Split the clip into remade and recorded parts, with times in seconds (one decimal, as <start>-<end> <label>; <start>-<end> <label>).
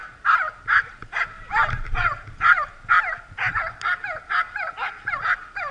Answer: 0.0-1.5 recorded; 1.5-2.9 remade; 2.9-5.7 recorded